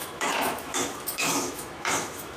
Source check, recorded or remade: remade